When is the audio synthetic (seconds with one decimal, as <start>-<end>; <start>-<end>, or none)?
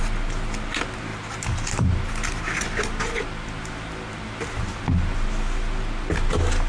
none